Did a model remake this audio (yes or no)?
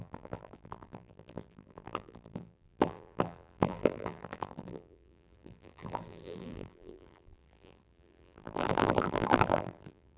yes